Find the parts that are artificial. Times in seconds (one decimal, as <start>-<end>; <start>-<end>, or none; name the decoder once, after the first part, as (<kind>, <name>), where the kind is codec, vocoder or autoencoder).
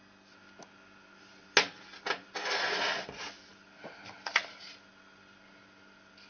none